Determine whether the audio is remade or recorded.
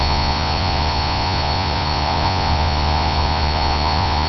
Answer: remade